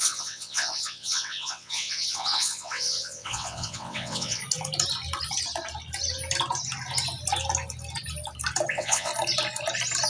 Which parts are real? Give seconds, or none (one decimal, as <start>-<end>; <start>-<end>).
4.4-8.7; 9.1-10.1